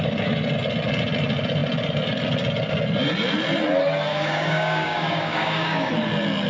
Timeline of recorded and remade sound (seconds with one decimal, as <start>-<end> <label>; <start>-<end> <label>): 0.0-4.1 recorded; 4.1-5.9 remade; 5.9-6.5 recorded